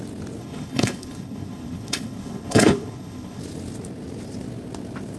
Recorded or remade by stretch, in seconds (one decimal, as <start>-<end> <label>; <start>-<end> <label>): 0.0-0.4 recorded; 0.4-3.4 remade; 3.4-5.2 recorded